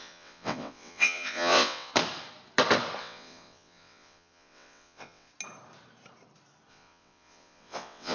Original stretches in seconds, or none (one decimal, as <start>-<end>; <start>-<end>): 1.9-3.0; 5.3-6.7